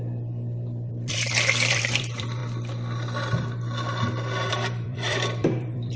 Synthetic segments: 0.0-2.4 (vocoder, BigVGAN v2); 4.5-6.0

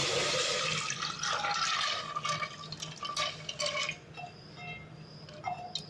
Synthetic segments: none

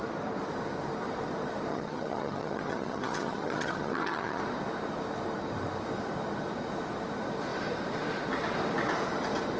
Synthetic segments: 1.7-4.4 (vocoder, HiFi-GAN)

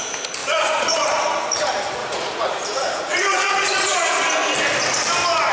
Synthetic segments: 0.4-1.2 (vocoder, Vocos); 2.0-4.2

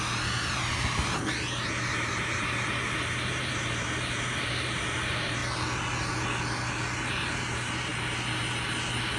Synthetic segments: 0.0-5.4 (vocoder, BigVGAN v2); 7.1-7.9